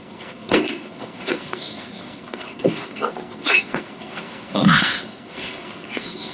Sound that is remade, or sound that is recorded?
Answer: remade